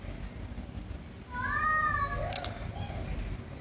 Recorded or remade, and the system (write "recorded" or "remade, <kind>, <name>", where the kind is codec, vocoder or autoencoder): recorded